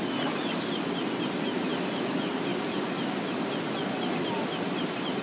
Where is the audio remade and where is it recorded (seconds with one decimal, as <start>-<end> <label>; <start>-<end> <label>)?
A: 0.0-5.2 recorded

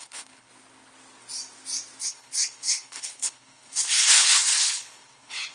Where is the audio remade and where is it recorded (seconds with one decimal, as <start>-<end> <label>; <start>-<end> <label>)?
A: 0.0-0.5 remade; 0.5-2.0 recorded; 2.0-5.5 remade